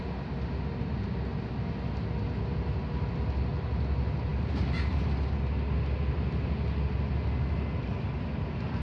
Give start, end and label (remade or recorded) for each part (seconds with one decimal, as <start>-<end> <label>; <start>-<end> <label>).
0.0-8.8 recorded